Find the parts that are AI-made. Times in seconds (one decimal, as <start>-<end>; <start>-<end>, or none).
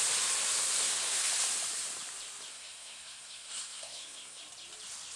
0.8-1.3; 2.5-4.4